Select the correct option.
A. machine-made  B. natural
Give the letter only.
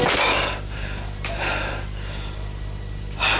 B